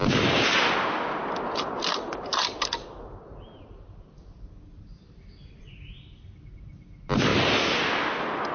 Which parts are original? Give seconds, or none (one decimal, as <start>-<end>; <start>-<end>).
0.0-8.5